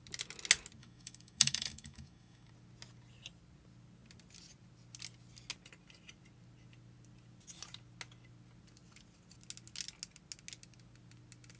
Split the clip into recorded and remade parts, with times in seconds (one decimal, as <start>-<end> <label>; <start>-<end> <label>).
0.0-0.8 recorded; 0.8-2.5 remade; 2.5-11.6 recorded